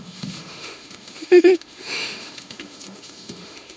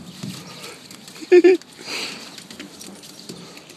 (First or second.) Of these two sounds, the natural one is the second